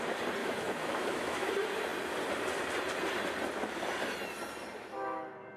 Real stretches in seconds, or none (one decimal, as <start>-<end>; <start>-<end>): 0.0-0.4; 1.5-5.6